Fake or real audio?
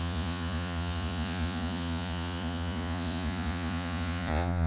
fake